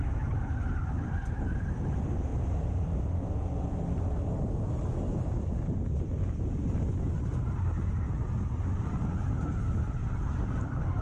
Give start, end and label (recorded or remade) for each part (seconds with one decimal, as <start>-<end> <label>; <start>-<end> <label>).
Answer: 0.0-11.0 recorded

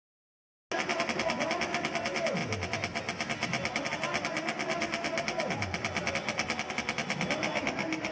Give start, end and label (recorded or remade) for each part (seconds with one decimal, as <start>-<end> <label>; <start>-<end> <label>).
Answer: 0.0-8.1 recorded

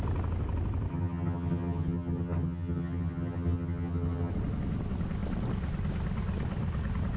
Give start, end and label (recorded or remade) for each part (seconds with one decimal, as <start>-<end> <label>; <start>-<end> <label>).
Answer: 0.0-0.9 recorded; 0.9-4.3 remade; 4.3-7.2 recorded